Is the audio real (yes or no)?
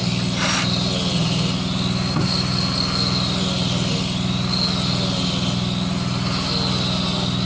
yes